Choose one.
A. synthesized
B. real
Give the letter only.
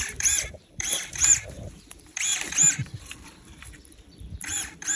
A